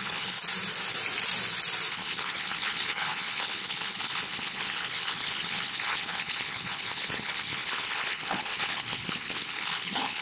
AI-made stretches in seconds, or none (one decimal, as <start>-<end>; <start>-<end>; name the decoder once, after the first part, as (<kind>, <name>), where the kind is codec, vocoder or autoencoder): 0.0-0.4 (codec, HILCodec); 1.9-10.2